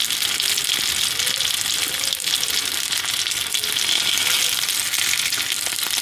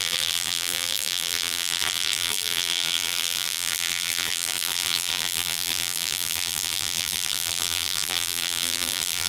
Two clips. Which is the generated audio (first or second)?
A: second